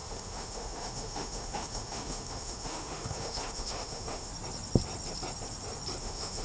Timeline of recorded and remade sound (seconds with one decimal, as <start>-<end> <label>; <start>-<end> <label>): 0.0-4.3 remade; 4.3-6.0 recorded; 6.0-6.4 remade